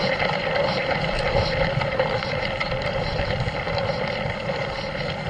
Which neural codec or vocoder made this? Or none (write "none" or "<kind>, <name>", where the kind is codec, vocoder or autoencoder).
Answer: vocoder, BigVGAN v2